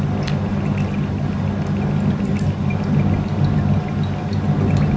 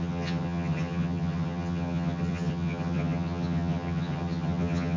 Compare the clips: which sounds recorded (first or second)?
first